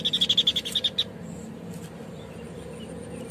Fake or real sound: real